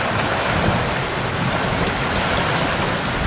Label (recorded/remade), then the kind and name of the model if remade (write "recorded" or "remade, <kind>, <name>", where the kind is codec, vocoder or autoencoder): recorded